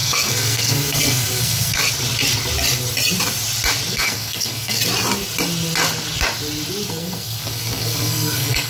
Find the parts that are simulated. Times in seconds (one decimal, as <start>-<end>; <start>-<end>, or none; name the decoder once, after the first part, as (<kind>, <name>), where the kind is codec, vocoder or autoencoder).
0.0-1.8 (codec, SNAC); 3.9-4.8; 6.9-8.7